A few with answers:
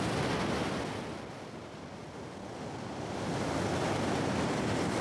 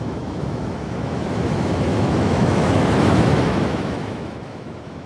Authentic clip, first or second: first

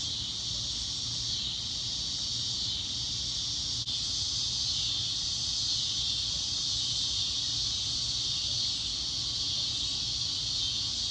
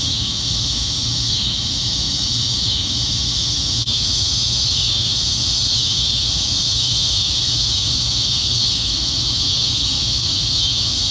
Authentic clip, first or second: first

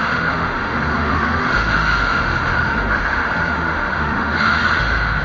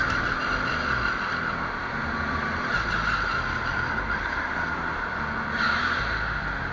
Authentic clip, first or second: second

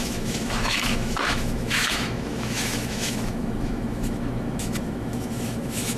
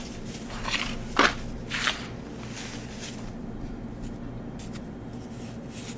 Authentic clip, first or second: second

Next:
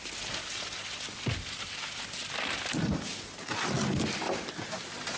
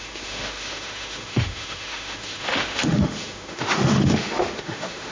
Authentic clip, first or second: first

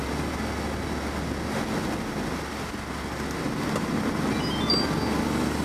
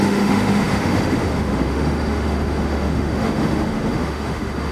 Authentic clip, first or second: first